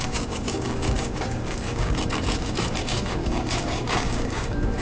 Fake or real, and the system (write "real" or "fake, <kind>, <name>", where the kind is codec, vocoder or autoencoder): fake, codec, DAC